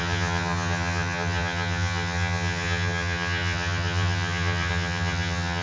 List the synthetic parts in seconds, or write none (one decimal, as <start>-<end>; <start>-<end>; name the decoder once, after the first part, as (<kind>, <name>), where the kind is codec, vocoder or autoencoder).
0.0-5.6 (vocoder, HiFi-GAN)